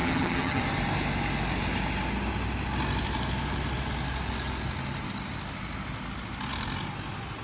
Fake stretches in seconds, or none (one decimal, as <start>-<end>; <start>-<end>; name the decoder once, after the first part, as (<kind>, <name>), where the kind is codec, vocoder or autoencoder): 0.0-0.6 (vocoder, HiFi-GAN)